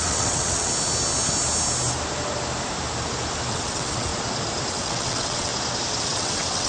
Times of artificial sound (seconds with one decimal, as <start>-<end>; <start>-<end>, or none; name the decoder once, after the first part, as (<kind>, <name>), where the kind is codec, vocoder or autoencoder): 0.0-0.7 (vocoder, WaveNeXt); 3.5-4.1; 4.7-5.5; 6.0-6.7